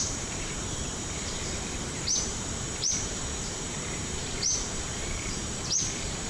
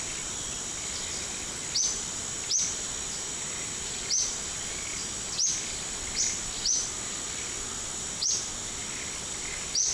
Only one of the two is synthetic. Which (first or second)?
first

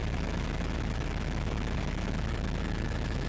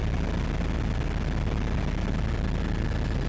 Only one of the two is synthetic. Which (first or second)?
first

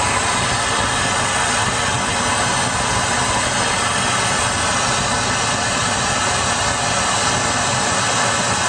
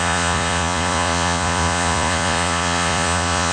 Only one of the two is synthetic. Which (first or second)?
second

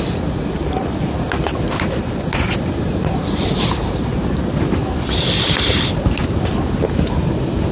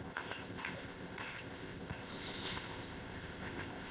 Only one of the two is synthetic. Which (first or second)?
second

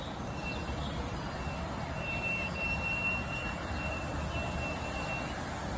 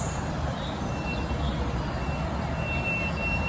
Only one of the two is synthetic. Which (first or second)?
first